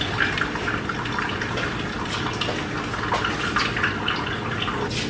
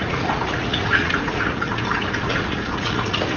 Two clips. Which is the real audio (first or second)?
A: first